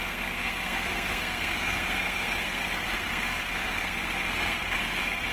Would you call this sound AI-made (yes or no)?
yes